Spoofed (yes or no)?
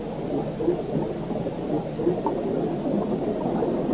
no